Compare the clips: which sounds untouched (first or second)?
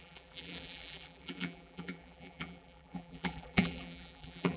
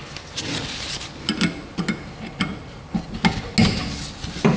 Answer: second